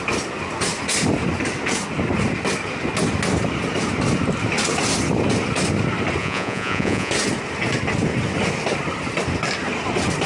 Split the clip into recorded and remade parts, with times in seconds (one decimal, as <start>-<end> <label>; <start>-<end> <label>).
0.0-6.2 recorded; 6.2-7.1 remade; 7.1-10.3 recorded